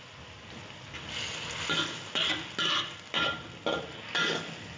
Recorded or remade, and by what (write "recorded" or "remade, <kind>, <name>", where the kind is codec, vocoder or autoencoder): recorded